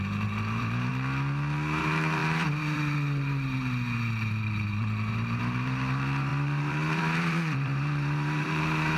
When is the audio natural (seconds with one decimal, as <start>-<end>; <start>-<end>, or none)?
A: 0.9-1.8